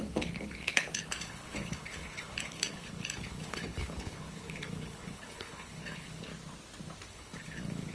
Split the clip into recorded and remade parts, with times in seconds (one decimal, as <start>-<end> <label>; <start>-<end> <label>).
0.0-6.3 remade; 6.3-7.1 recorded; 7.1-7.9 remade